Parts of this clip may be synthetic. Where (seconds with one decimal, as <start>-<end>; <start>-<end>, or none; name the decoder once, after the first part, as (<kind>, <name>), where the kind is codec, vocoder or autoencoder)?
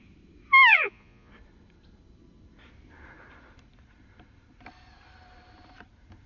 0.7-1.3 (vocoder, Vocos)